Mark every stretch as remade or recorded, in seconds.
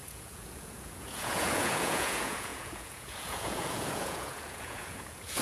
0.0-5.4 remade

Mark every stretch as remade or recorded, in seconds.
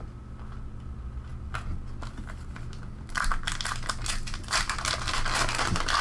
0.0-6.0 recorded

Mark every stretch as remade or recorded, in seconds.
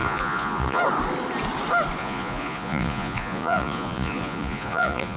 0.0-0.8 remade; 0.8-2.0 recorded; 2.0-5.2 remade